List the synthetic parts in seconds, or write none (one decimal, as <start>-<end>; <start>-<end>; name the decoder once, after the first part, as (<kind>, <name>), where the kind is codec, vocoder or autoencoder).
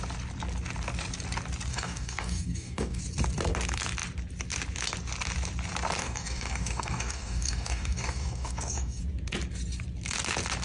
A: 1.7-3.0 (codec, DAC); 6.0-9.0